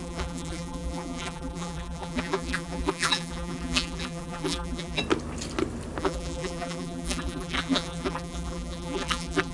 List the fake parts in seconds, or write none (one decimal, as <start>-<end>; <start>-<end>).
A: 0.0-5.0; 6.0-9.5

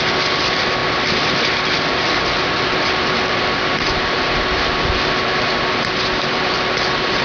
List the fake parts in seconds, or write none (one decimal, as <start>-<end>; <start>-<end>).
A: none

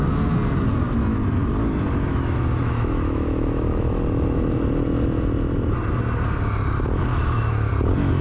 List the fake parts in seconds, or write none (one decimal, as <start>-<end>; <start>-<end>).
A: 2.1-4.0; 7.1-7.7